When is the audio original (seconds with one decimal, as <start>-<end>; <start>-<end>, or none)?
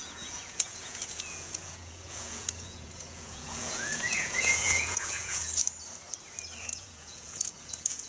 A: 5.6-6.6